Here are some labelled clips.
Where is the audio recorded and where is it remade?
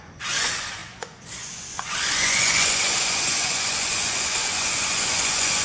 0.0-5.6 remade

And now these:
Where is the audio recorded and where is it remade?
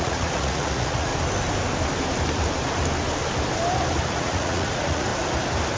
0.0-1.1 remade; 1.1-4.1 recorded; 4.1-5.1 remade; 5.1-5.8 recorded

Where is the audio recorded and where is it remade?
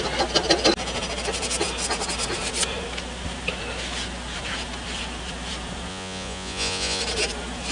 0.0-5.9 recorded; 5.9-7.0 remade; 7.0-7.7 recorded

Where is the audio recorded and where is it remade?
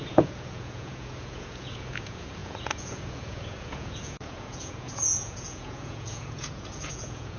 0.0-7.4 remade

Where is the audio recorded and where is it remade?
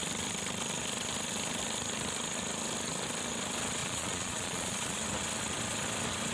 0.0-3.8 recorded; 3.8-5.0 remade; 5.0-6.3 recorded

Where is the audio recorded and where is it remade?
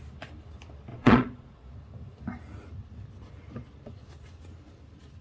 0.0-0.9 recorded; 0.9-1.7 remade; 1.7-5.2 recorded